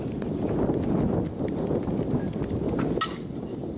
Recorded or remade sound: recorded